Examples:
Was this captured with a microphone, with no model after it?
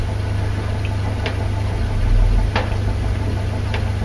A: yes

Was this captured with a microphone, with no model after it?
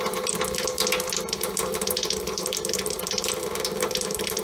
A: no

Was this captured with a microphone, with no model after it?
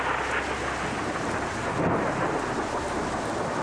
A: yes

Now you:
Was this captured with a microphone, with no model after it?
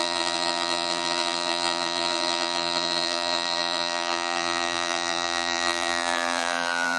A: no